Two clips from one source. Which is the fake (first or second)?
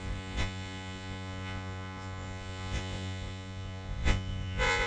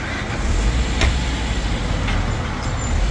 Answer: first